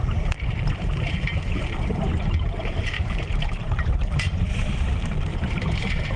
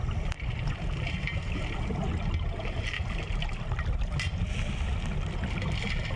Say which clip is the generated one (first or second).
first